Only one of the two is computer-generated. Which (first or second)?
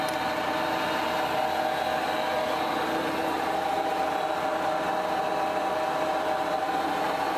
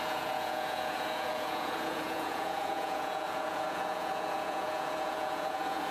second